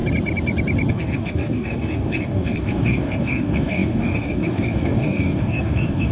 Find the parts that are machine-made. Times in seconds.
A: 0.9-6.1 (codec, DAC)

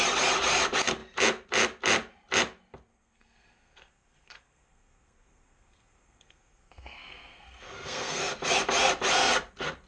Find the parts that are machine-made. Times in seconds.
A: 2.9-8.2 (codec, SNAC)

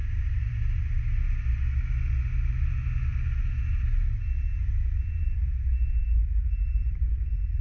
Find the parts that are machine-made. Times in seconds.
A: 0.0-1.0 (vocoder, BigVGAN v2); 6.0-7.1

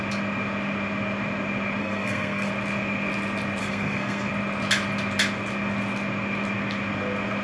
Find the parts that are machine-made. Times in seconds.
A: 1.8-2.5 (codec, SNAC); 3.6-4.3

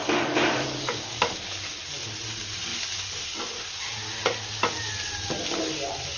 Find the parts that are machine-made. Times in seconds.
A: 0.0-1.2 (codec, DAC)

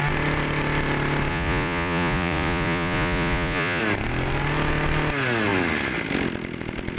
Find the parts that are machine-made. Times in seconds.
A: 1.3-3.8 (vocoder, Vocos)

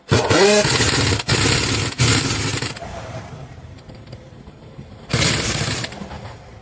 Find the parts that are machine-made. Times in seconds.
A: 2.5-6.1 (vocoder, BigVGAN v2)

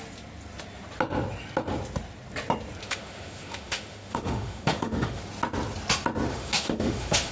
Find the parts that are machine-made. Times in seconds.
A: 2.8-5.2 (autoencoder, DAC-VAE); 6.3-7.3